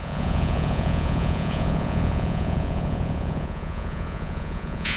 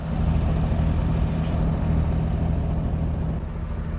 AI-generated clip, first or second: first